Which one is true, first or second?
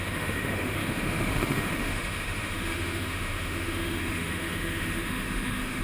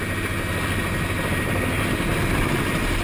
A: second